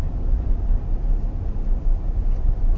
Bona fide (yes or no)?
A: yes